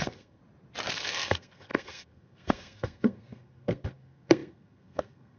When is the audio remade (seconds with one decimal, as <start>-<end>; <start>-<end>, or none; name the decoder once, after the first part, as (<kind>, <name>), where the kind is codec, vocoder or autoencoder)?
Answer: 0.0-0.4 (codec, SNAC); 0.9-5.4